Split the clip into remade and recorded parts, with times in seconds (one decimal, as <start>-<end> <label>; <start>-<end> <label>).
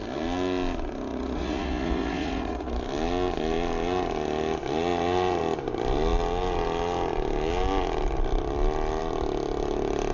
0.0-1.1 recorded; 1.1-2.8 remade; 2.8-10.1 recorded